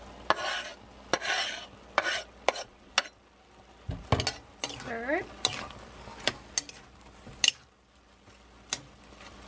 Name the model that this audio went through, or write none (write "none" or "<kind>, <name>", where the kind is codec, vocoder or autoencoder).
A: none